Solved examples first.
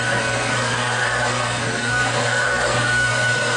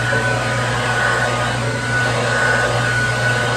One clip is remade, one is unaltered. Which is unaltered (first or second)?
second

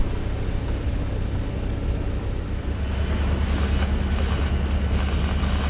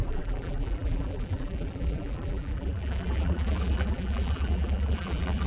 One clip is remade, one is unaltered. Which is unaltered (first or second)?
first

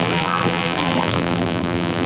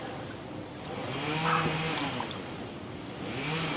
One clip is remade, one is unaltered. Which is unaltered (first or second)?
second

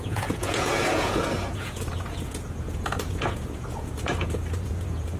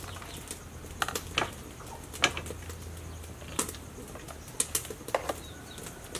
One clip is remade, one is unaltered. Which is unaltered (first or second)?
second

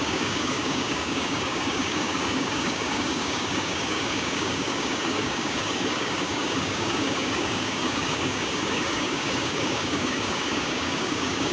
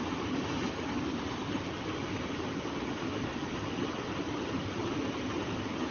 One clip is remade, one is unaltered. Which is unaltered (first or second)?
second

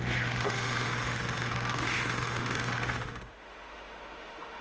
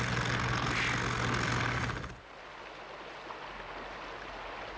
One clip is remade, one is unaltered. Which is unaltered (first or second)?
second